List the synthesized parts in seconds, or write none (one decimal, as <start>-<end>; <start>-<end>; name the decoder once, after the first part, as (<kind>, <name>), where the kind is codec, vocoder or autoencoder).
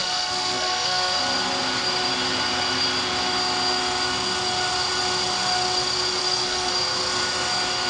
0.0-1.2 (codec, SNAC); 6.2-6.7